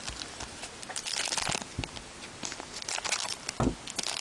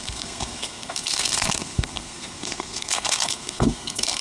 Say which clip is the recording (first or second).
first